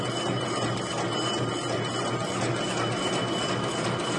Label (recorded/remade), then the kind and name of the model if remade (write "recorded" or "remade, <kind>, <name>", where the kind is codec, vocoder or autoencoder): recorded